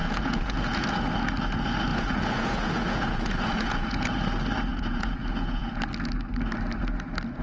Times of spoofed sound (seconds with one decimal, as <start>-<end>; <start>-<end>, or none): 0.0-1.1; 1.9-4.1; 4.7-5.7